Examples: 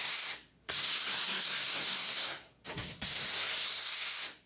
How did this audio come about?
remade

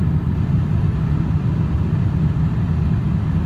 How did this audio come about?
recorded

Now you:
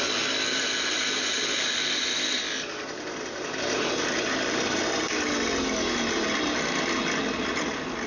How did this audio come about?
recorded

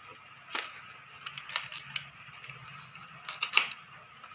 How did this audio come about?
recorded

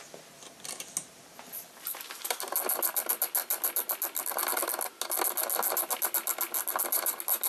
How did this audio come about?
recorded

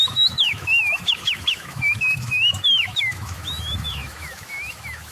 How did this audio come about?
remade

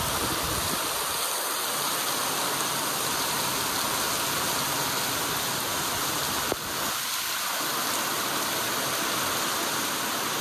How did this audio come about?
recorded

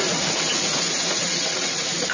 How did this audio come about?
remade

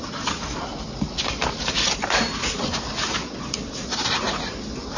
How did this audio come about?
recorded